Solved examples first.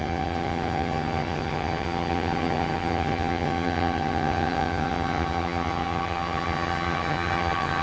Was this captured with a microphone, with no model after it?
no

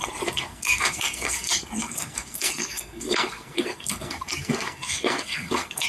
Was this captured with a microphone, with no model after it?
no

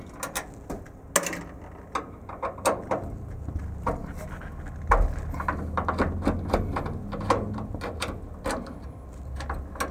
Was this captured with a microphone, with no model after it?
yes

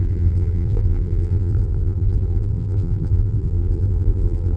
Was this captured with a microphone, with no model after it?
no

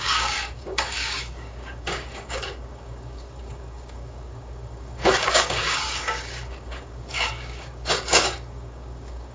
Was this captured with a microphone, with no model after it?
no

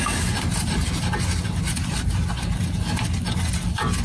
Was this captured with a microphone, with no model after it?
yes